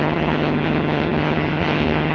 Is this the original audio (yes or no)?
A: no